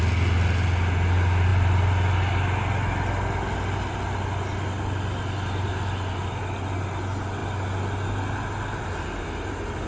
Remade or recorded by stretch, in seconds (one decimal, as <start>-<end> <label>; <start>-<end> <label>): 0.0-9.9 recorded